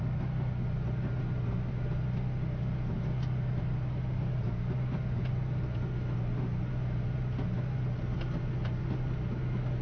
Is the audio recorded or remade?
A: recorded